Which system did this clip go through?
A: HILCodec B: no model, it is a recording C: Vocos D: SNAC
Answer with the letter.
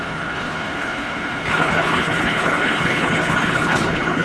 A